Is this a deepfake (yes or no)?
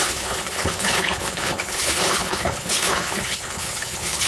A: yes